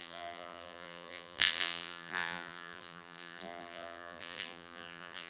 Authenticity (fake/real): fake